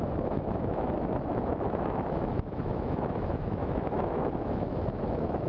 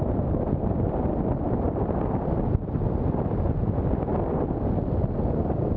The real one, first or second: second